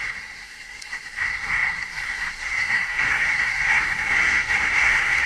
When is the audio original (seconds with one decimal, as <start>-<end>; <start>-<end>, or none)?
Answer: none